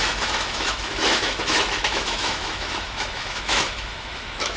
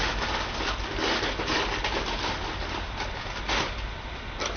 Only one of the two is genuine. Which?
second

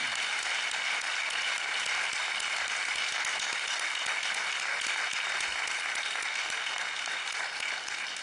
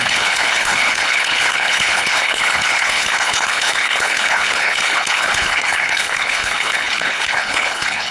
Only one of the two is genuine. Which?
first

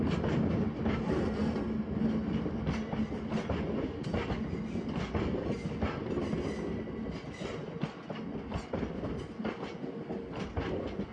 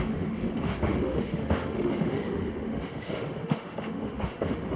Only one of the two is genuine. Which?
first